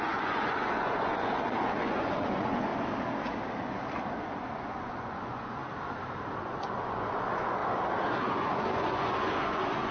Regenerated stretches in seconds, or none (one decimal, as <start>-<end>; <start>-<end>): 0.0-2.7; 4.2-5.6; 6.4-7.6; 8.2-9.9